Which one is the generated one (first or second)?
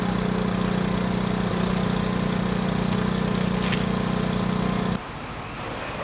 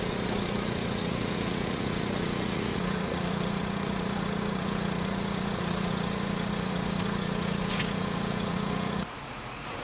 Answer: second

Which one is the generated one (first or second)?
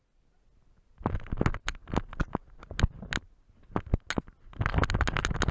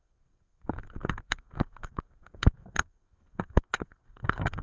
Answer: second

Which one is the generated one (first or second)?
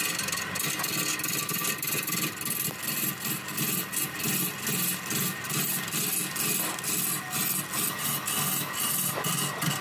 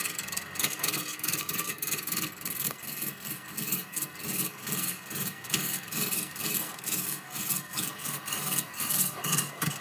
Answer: second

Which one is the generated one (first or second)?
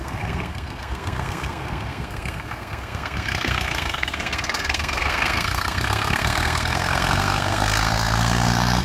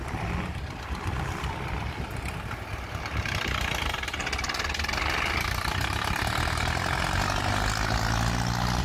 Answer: first